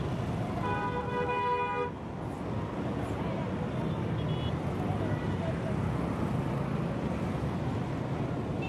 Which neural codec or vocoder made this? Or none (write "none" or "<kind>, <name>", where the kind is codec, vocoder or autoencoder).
none